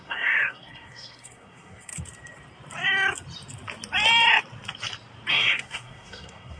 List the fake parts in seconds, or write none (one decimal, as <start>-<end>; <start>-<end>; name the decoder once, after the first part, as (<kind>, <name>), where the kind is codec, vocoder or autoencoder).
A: 0.0-1.9 (codec, SNAC); 5.3-6.6